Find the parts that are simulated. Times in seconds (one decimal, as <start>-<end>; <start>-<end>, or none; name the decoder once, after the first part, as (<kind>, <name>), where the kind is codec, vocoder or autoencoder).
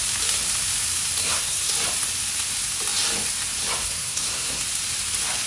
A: 1.2-1.7 (codec, SNAC); 3.8-4.6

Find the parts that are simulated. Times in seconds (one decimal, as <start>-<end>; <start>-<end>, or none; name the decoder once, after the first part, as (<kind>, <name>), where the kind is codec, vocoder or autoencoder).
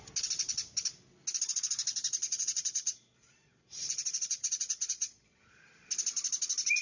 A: 2.2-5.9 (vocoder, Vocos)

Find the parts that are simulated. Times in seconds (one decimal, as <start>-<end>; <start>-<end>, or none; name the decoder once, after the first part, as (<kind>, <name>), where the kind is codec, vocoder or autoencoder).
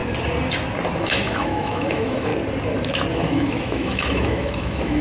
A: 1.0-2.3 (autoencoder, DAC-VAE); 3.1-5.0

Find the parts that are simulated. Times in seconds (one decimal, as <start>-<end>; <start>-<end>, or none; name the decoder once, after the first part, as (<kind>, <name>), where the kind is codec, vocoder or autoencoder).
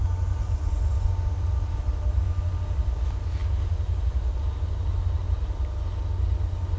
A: 0.4-1.1 (vocoder, Vocos)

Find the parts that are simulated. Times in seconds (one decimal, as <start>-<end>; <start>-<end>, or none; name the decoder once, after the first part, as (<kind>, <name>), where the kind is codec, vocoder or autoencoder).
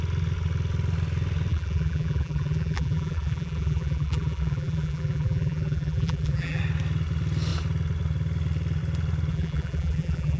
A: 1.5-6.6 (vocoder, BigVGAN v2); 9.3-10.4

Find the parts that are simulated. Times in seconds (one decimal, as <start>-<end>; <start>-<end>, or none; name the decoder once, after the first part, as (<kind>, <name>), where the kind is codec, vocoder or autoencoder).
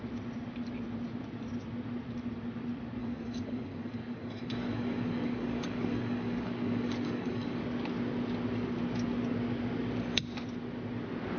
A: 3.0-7.6 (codec, DAC)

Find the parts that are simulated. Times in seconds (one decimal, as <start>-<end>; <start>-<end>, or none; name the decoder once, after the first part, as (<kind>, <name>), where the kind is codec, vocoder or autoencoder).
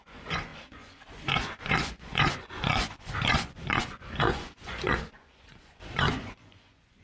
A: 0.0-7.0 (vocoder, Vocos)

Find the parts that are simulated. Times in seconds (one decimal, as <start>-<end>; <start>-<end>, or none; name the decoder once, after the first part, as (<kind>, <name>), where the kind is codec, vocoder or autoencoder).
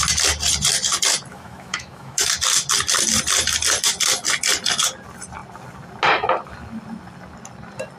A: 1.3-2.3 (autoencoder, DAC-VAE)